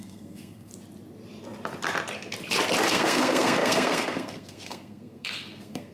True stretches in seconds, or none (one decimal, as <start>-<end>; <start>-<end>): 0.7-2.9